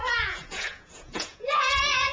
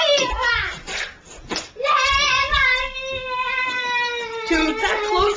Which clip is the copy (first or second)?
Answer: first